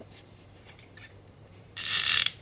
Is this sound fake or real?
fake